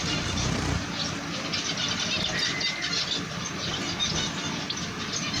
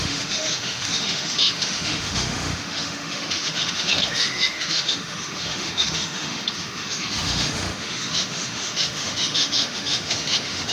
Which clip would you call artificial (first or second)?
second